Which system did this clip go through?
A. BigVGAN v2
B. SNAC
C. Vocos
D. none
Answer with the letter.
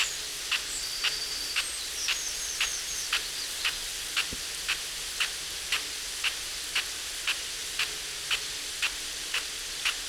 D